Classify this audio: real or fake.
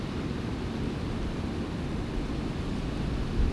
real